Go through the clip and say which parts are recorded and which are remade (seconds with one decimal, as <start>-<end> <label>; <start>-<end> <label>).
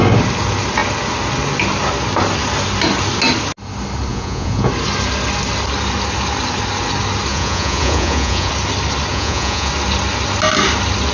0.0-4.1 recorded; 4.1-4.7 remade; 4.7-7.3 recorded; 7.3-8.5 remade; 8.5-9.1 recorded; 9.1-9.7 remade; 9.7-11.1 recorded